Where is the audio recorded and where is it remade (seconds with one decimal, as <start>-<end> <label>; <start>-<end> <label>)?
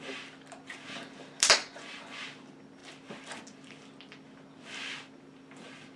0.0-1.6 recorded; 1.6-2.2 remade; 2.2-6.0 recorded